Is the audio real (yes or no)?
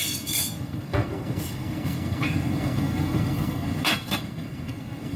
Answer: no